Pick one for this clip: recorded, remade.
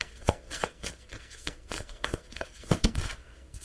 remade